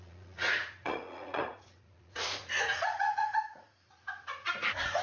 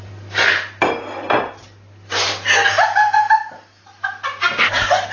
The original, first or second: second